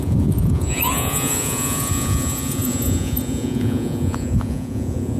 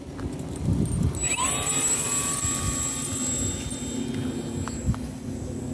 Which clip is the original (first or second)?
second